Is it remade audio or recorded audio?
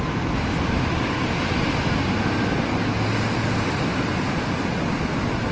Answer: recorded